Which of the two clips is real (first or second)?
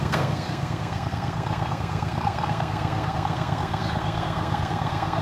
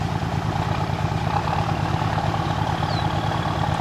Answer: second